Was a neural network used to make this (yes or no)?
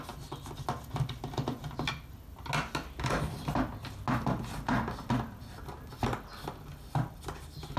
no